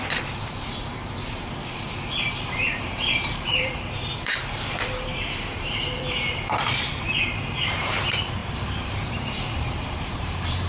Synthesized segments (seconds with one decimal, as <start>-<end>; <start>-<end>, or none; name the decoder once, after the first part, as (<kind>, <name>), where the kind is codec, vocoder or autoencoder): 0.0-1.6 (vocoder, BigVGAN v2); 2.3-10.7